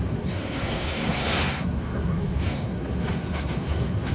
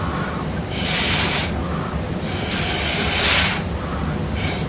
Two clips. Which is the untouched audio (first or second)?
second